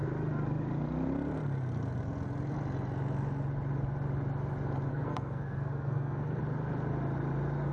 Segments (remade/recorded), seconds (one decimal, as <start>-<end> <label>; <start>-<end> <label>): 0.0-4.9 recorded; 4.9-6.4 remade; 6.4-7.7 recorded